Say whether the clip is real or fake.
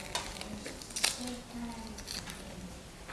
real